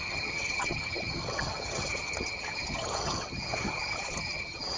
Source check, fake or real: fake